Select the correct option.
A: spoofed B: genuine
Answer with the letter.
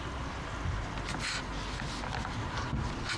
B